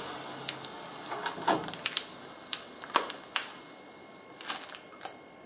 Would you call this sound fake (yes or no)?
no